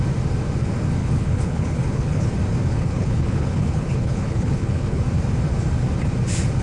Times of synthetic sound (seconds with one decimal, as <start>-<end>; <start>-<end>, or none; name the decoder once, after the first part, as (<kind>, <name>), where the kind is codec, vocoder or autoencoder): 1.0-2.3 (codec, HILCodec); 2.7-5.0